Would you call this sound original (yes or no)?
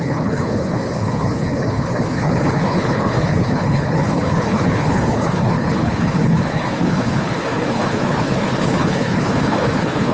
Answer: no